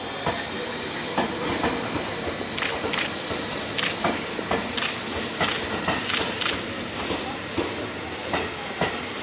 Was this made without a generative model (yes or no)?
yes